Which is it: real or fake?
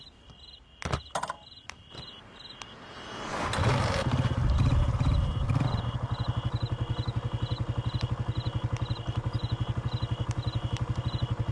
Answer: real